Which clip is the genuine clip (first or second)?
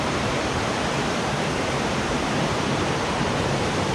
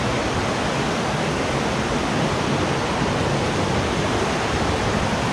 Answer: second